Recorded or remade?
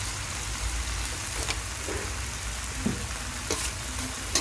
recorded